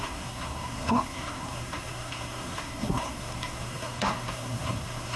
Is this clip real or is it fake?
fake